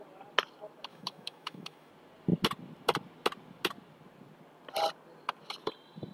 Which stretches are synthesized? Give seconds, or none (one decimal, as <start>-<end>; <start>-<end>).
0.9-1.9